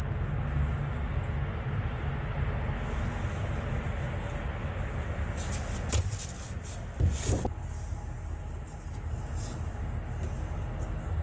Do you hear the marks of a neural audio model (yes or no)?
no